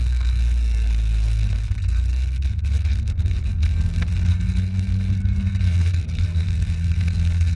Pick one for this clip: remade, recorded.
remade